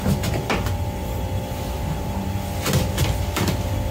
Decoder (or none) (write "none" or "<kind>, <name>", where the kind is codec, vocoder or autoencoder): vocoder, BigVGAN v2